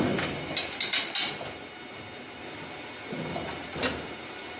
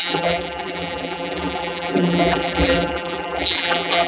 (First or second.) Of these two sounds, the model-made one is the second